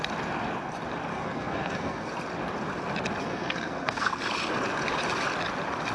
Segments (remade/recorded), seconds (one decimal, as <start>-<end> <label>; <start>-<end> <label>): 0.0-1.1 recorded; 1.1-2.1 remade; 2.1-3.2 recorded; 3.2-4.2 remade; 4.2-5.9 recorded